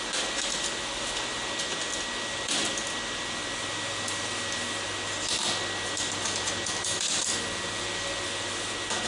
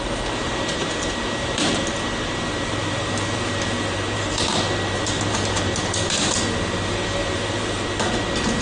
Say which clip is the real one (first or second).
first